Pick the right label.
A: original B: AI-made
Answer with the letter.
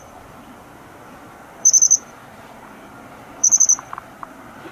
B